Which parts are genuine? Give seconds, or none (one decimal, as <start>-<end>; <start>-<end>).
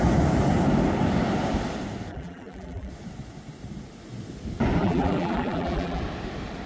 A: 0.0-2.1; 2.9-4.8; 6.0-6.7